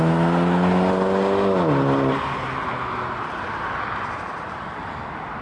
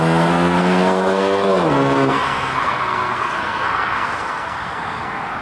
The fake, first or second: second